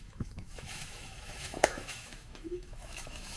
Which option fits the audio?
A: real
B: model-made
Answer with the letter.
B